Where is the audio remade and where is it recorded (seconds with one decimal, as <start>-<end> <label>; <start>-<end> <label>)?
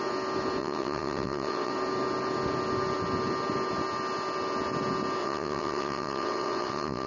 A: 0.0-0.6 recorded; 0.6-1.7 remade; 1.7-5.2 recorded; 5.2-7.1 remade